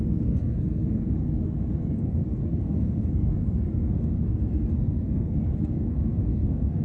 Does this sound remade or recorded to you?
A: remade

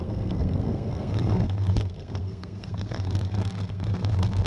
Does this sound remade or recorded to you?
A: remade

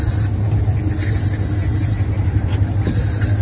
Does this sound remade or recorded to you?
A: recorded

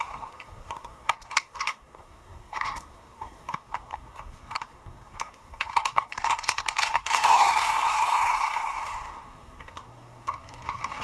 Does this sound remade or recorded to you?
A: remade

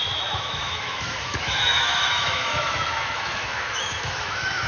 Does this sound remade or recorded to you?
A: remade